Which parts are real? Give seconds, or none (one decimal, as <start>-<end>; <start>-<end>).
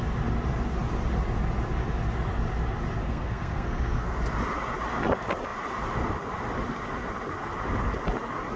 0.0-3.0; 4.2-8.6